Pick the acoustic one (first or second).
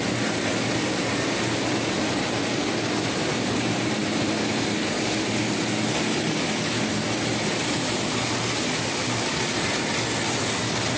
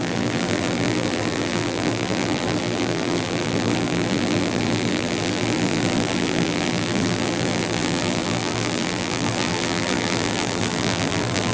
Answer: first